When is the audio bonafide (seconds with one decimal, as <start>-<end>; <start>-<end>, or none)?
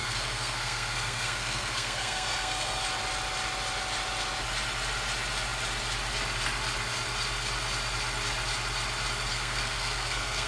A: 2.8-9.3